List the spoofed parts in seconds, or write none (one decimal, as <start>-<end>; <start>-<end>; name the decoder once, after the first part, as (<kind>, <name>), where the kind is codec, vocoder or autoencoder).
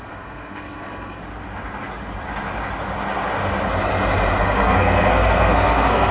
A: 0.0-1.2 (codec, SNAC); 4.4-6.1